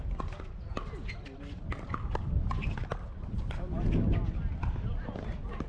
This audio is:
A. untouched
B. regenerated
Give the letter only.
A